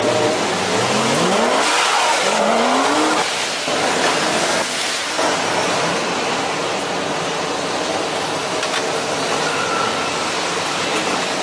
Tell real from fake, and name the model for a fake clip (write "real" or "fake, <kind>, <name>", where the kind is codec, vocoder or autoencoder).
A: real